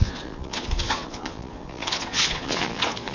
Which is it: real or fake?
fake